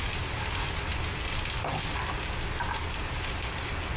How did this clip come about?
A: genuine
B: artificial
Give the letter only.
A